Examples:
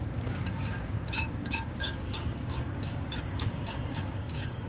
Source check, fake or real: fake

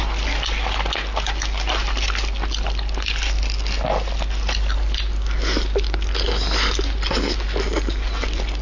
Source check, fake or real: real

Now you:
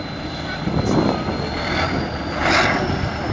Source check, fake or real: real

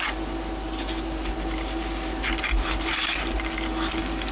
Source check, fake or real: real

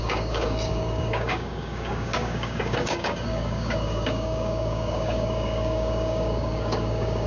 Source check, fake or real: fake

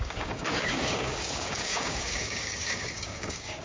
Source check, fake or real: fake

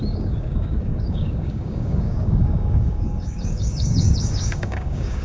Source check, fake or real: fake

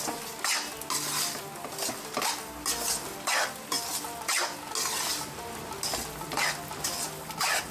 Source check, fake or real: real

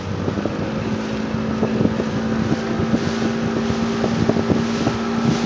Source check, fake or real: real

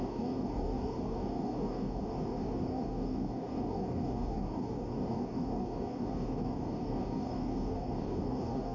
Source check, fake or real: fake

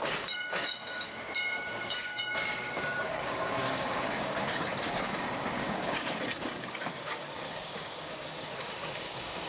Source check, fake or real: fake